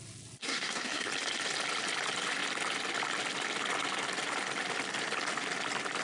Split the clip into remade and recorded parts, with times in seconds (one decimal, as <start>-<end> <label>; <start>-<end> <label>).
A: 0.0-0.4 recorded; 0.4-1.1 remade; 1.1-6.0 recorded